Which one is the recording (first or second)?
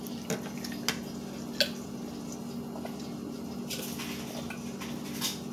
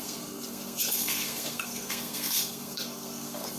first